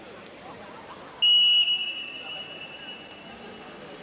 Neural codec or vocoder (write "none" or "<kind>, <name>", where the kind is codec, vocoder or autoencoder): none